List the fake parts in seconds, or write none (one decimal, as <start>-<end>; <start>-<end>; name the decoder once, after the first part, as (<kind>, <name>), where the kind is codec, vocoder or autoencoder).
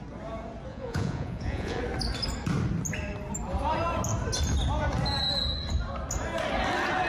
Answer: 0.7-1.8 (vocoder, Vocos)